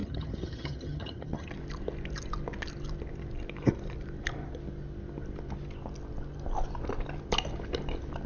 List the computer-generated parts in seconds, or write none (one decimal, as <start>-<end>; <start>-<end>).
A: 0.0-1.5